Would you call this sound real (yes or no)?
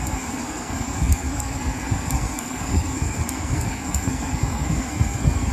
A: no